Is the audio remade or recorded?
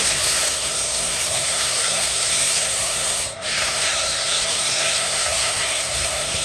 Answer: remade